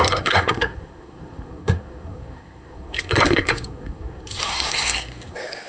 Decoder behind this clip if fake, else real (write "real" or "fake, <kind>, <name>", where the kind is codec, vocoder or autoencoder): fake, codec, SNAC